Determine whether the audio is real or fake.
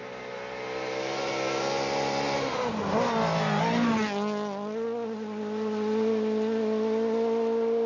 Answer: real